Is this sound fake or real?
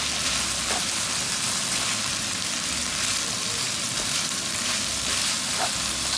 real